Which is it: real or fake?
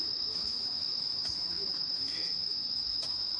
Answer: fake